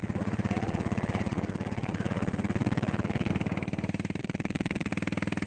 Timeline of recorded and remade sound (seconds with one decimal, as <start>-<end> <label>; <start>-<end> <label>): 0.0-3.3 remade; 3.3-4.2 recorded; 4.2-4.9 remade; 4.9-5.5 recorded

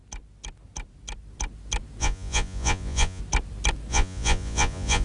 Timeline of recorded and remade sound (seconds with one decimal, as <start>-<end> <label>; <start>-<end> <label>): 0.0-2.0 recorded; 2.0-3.2 remade; 3.2-3.9 recorded; 3.9-5.0 remade

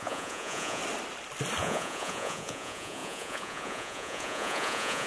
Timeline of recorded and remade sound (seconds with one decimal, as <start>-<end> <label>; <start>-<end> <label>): 0.0-0.8 remade; 0.8-1.6 recorded; 1.6-5.1 remade